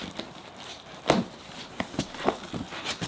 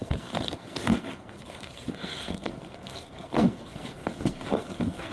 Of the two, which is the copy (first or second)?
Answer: second